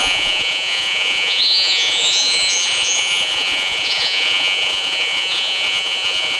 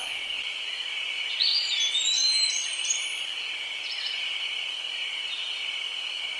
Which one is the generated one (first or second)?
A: first